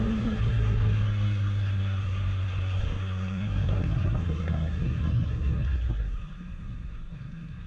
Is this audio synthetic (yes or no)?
yes